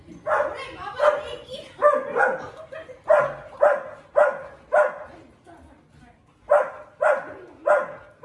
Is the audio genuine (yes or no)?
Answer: yes